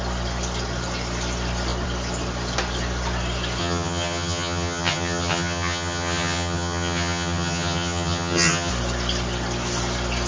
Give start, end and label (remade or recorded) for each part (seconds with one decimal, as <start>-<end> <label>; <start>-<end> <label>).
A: 0.0-3.6 recorded; 3.6-8.7 remade; 8.7-10.3 recorded